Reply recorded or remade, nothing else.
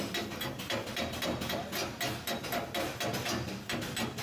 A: recorded